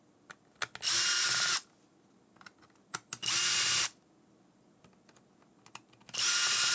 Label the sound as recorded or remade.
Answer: recorded